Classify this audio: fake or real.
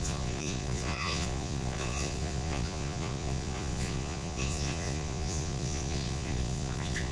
fake